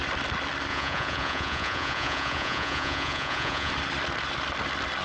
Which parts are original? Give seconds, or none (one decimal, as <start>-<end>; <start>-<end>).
0.0-0.7; 3.7-5.0